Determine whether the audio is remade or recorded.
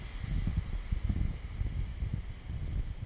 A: recorded